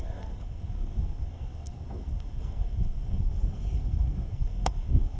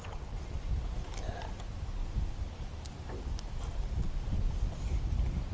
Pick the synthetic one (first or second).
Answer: first